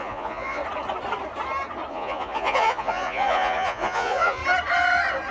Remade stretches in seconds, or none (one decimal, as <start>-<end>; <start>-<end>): 0.0-0.6; 1.9-4.4